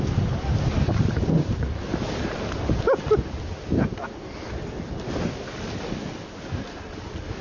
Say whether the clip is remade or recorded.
recorded